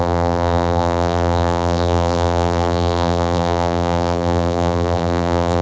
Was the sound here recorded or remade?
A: remade